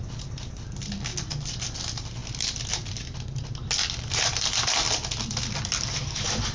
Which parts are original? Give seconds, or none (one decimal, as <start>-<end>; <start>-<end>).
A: 0.0-6.5